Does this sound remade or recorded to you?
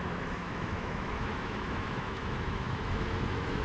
remade